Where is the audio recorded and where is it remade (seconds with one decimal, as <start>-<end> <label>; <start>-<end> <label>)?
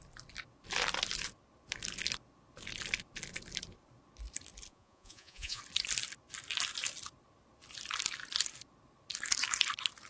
0.0-4.7 recorded; 4.7-5.6 remade; 5.6-10.1 recorded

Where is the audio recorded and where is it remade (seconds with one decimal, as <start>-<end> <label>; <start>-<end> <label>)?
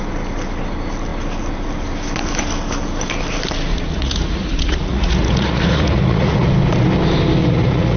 0.0-3.7 recorded; 3.7-6.5 remade; 6.5-7.4 recorded; 7.4-8.0 remade